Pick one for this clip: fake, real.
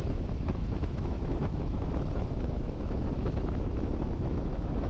fake